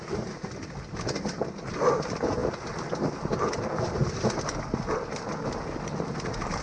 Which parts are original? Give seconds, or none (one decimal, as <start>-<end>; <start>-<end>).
0.0-6.6